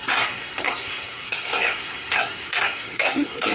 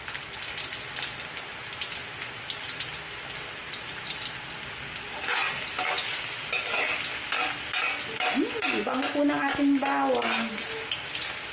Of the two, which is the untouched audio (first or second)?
second